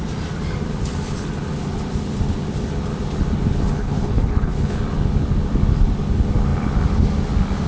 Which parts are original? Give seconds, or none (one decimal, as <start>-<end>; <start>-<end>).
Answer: 0.0-3.8; 4.8-7.7